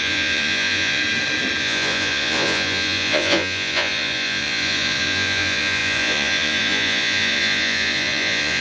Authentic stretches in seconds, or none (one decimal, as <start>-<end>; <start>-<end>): 1.0-1.6